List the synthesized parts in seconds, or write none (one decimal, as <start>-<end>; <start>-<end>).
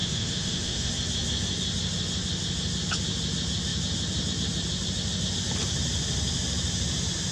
0.0-0.9